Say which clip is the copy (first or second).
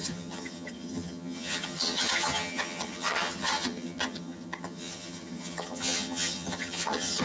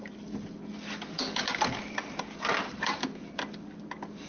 first